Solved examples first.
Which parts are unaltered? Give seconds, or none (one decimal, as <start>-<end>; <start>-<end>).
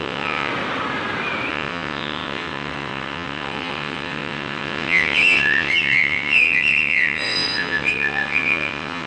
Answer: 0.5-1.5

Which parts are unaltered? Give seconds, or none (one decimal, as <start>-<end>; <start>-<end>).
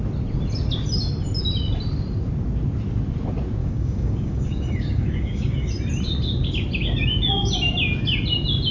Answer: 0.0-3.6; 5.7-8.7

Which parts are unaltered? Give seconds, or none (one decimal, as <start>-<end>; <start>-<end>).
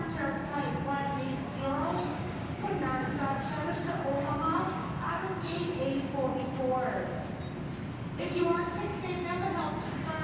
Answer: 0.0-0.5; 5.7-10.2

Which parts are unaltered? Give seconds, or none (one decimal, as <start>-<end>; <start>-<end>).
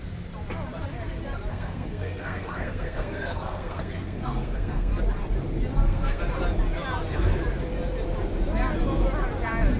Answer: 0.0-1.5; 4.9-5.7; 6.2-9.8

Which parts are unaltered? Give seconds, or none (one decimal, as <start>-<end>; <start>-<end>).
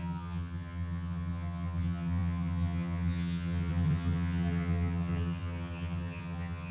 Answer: none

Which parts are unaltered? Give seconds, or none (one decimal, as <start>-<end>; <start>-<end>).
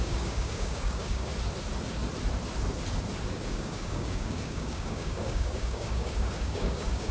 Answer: 1.3-3.5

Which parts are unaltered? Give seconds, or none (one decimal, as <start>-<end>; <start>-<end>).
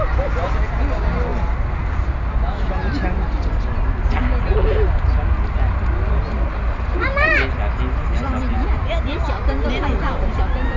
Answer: 0.0-8.5; 10.4-10.8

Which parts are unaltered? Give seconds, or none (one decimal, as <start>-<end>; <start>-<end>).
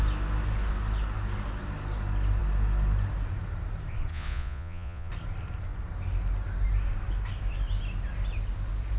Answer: 0.0-4.1; 5.1-9.0